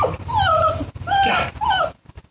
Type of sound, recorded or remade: remade